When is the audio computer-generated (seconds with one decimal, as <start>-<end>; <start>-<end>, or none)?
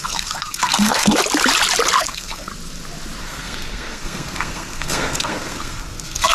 0.0-1.2; 2.0-2.5; 3.2-6.3